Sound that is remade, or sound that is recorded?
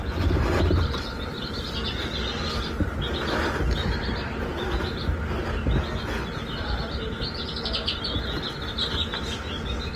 recorded